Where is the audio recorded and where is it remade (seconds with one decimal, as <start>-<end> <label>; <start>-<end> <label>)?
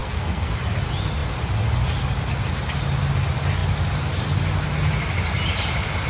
0.0-0.6 remade; 0.6-6.1 recorded